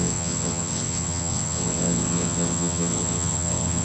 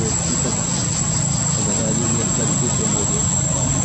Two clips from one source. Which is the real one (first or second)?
second